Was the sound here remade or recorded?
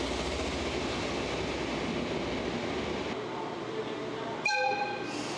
recorded